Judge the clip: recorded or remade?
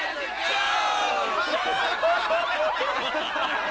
recorded